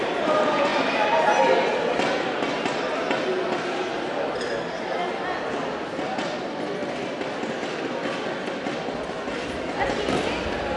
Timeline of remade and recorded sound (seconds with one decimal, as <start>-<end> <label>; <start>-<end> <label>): 0.0-10.8 recorded